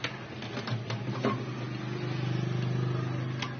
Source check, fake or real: real